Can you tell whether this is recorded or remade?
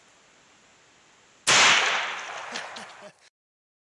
recorded